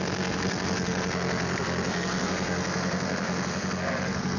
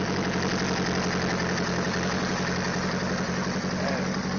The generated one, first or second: first